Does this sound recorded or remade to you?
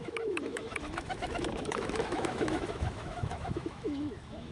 remade